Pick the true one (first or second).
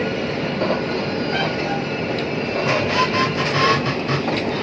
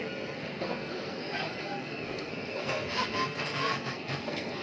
first